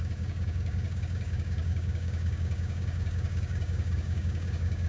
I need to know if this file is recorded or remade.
remade